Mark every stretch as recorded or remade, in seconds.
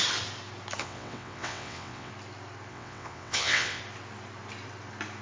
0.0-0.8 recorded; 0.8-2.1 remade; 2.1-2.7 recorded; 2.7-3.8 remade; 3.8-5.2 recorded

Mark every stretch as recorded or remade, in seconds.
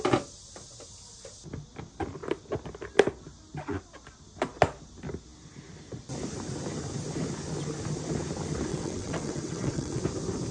0.0-8.7 recorded; 8.7-10.0 remade; 10.0-10.5 recorded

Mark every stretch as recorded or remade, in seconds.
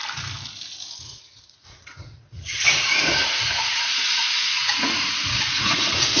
0.0-1.0 recorded; 1.0-6.2 remade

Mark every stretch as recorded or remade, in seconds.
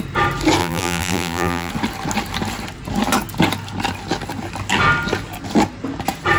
0.0-0.6 recorded; 0.6-1.7 remade; 1.7-6.4 recorded